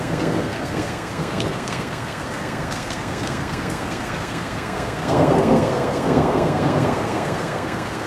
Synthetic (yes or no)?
yes